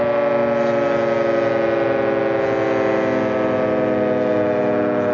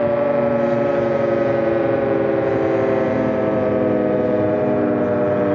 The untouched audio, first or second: first